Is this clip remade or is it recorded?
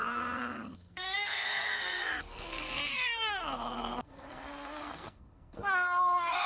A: remade